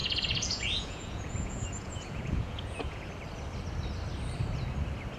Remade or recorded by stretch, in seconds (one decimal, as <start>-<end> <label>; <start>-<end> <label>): 0.0-3.1 remade; 3.1-5.2 recorded